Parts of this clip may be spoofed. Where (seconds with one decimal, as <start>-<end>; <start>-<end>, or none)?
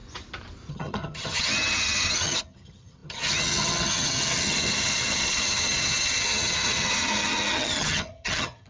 0.7-8.7